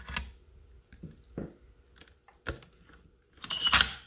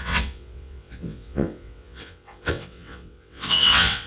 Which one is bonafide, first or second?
first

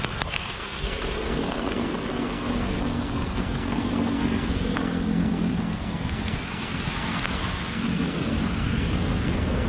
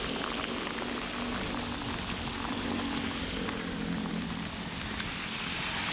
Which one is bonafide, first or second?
second